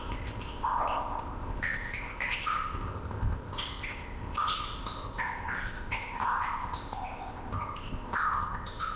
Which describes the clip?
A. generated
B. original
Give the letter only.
A